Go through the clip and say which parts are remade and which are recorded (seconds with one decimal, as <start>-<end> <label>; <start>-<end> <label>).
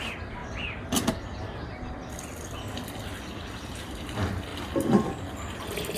0.0-6.0 recorded